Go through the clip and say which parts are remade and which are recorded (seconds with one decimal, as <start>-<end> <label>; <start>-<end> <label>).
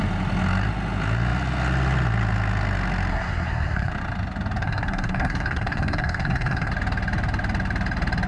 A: 0.0-3.1 recorded; 3.1-3.9 remade; 3.9-4.6 recorded; 4.6-6.7 remade; 6.7-8.3 recorded